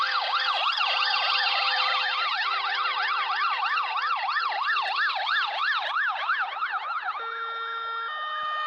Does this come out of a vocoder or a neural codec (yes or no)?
no